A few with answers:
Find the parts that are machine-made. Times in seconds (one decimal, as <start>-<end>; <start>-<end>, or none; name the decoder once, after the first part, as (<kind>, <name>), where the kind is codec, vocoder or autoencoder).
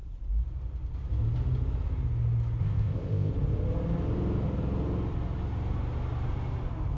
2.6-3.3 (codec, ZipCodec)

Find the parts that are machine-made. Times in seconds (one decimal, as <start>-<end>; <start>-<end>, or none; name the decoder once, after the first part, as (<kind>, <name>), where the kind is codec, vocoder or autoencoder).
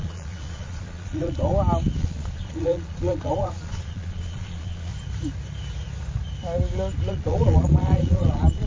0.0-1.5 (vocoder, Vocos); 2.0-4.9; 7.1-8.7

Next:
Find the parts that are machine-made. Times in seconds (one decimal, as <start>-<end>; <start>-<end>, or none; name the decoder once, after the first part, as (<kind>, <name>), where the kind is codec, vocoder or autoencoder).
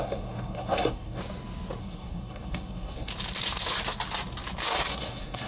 0.0-1.2 (codec, SNAC); 1.8-3.1; 4.9-5.5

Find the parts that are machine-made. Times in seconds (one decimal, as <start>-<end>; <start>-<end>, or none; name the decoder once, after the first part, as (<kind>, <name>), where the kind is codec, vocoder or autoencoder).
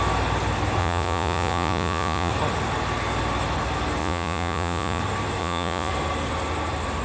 0.8-2.3 (vocoder, Vocos); 4.0-5.0; 5.4-5.9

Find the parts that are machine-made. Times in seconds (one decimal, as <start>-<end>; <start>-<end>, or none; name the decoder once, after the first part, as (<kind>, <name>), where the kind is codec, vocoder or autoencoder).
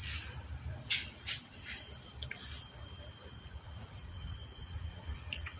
3.4-5.6 (vocoder, Vocos)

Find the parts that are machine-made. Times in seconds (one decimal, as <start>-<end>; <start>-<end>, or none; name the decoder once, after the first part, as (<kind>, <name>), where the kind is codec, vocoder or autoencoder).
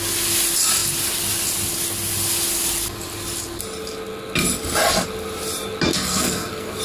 5.9-6.8 (codec, SNAC)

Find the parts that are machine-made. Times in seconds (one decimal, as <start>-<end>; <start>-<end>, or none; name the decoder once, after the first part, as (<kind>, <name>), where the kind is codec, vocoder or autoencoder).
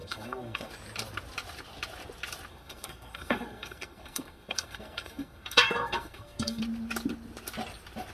0.0-0.7 (codec, SNAC); 2.5-6.6